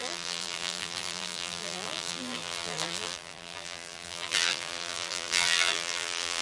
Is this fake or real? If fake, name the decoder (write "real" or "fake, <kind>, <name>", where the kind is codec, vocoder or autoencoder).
fake, vocoder, BigVGAN v2